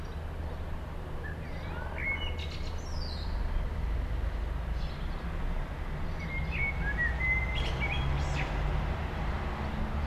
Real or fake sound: real